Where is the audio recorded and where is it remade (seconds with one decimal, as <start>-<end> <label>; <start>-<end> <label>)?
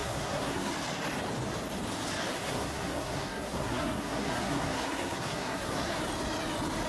0.0-0.7 remade; 0.7-2.3 recorded; 2.3-6.0 remade; 6.0-6.9 recorded